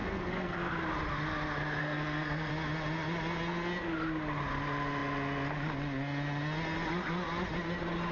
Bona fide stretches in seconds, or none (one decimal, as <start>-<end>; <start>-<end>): 0.7-1.8; 2.5-8.1